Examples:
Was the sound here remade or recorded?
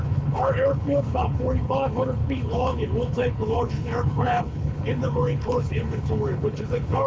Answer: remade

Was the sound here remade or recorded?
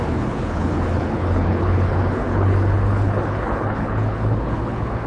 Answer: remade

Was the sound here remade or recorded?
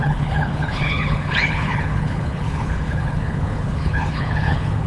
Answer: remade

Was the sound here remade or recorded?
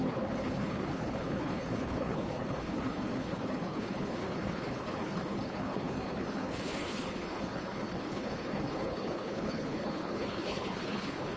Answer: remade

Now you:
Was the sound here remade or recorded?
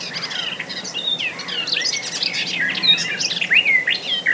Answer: recorded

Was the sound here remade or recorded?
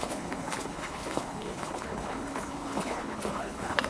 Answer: remade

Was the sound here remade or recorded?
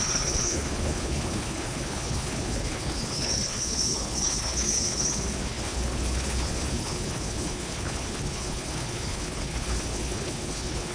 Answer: remade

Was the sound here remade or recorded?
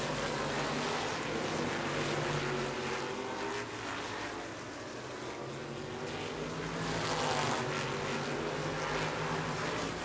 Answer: recorded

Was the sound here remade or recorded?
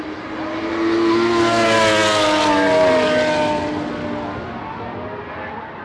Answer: recorded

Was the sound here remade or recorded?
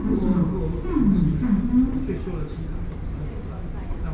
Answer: recorded